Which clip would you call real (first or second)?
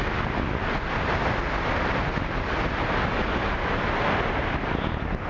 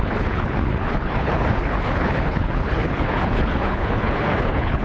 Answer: first